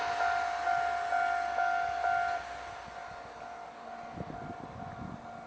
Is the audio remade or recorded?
recorded